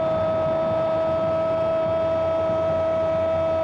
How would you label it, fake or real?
real